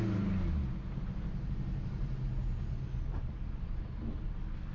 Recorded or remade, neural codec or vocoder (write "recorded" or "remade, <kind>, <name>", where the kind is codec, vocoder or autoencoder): recorded